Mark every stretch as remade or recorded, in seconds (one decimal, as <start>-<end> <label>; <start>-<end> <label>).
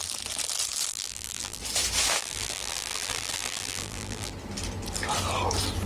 0.0-0.9 recorded; 0.9-1.6 remade; 1.6-2.2 recorded; 2.2-4.3 remade; 4.3-5.9 recorded